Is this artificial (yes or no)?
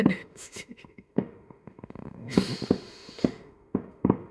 yes